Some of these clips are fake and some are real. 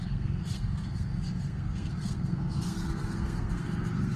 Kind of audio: fake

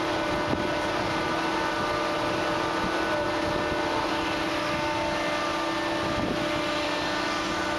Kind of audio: real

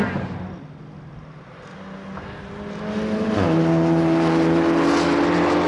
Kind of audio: real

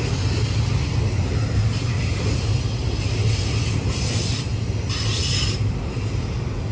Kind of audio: real